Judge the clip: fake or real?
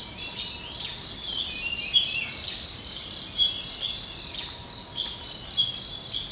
real